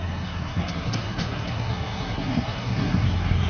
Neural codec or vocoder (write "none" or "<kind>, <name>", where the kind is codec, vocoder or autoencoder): codec, SNAC